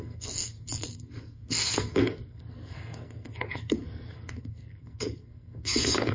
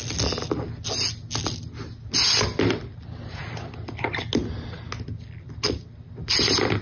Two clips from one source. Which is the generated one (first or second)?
first